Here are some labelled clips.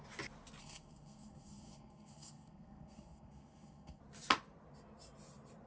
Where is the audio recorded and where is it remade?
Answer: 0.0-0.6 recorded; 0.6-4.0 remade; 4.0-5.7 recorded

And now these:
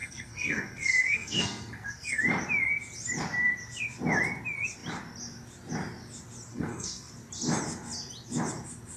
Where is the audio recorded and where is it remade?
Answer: 0.0-2.2 remade; 2.2-6.5 recorded; 6.5-7.1 remade; 7.1-9.0 recorded

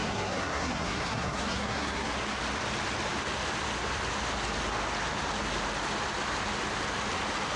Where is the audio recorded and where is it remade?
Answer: 0.0-2.1 remade; 2.1-7.6 recorded

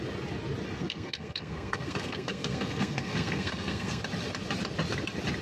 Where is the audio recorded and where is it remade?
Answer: 0.0-0.8 recorded; 0.8-4.0 remade; 4.0-5.4 recorded

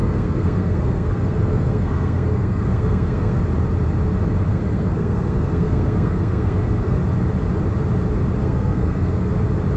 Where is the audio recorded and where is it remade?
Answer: 0.0-3.4 remade; 3.4-4.5 recorded; 4.5-7.0 remade; 7.0-8.4 recorded; 8.4-9.3 remade; 9.3-9.8 recorded

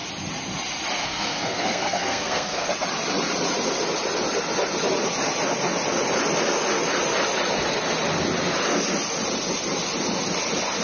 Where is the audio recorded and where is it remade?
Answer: 0.0-1.0 recorded; 1.0-2.7 remade; 2.7-10.8 recorded